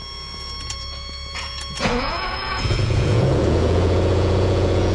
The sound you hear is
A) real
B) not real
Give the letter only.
B